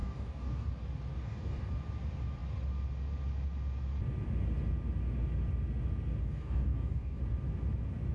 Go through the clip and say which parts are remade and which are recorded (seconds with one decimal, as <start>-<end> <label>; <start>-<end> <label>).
0.0-0.7 remade; 0.7-1.1 recorded; 1.1-1.7 remade; 1.7-6.2 recorded; 6.2-7.2 remade; 7.2-8.1 recorded